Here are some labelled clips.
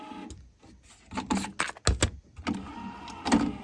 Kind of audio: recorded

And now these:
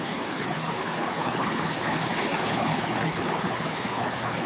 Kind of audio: remade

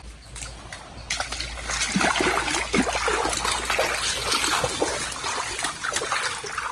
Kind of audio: recorded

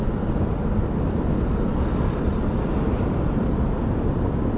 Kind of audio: recorded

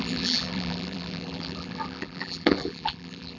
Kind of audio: remade